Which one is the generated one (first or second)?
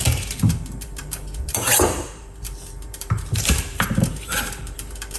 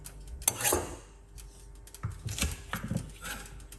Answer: first